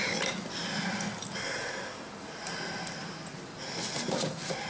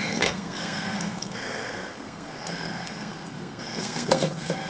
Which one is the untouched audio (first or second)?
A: first